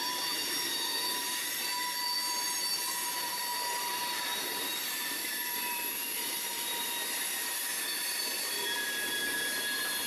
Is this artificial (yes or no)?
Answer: yes